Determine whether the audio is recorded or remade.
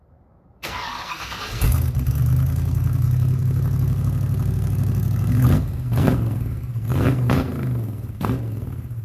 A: remade